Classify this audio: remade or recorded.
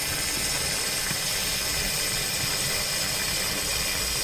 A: recorded